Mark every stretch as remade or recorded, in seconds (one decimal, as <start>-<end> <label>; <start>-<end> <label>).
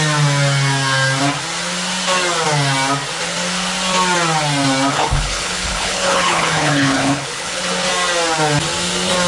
0.0-4.9 recorded; 4.9-7.6 remade; 7.6-9.3 recorded